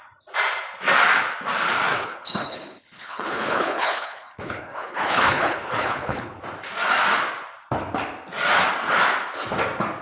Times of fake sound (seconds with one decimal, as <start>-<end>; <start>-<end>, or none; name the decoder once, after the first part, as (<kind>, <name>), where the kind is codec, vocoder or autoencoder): 1.9-6.4 (codec, HILCodec)